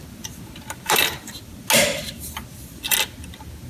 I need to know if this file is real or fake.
real